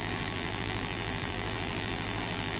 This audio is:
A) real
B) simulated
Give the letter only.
B